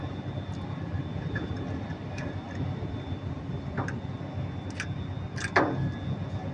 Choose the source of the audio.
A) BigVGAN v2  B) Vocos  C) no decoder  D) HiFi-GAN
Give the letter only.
C